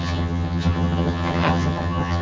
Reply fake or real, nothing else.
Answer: fake